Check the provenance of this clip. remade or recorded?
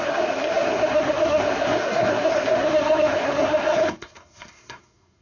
remade